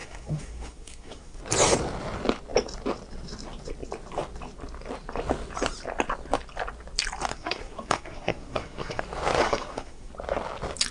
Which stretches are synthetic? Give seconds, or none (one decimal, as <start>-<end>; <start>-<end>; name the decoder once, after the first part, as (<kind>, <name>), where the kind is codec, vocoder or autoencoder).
0.0-1.4 (codec, SNAC); 7.3-9.0; 9.4-10.1